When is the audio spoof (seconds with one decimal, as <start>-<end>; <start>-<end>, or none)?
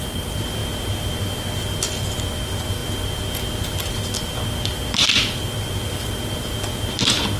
none